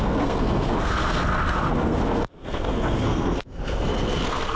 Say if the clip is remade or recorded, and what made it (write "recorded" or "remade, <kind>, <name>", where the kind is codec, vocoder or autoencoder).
remade, codec, SNAC